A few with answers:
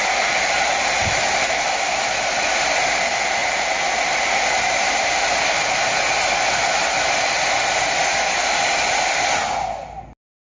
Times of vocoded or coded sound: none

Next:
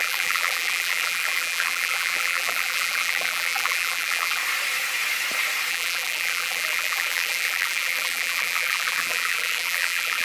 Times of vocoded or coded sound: 0.0-4.4 (vocoder, BigVGAN v2); 5.7-10.2

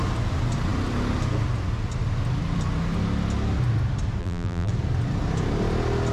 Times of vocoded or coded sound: 4.2-4.7 (vocoder, BigVGAN v2)